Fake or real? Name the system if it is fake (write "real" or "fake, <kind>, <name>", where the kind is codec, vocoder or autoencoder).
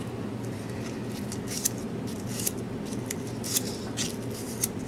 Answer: real